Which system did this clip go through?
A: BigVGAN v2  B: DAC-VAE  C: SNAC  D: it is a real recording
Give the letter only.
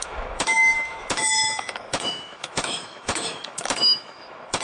B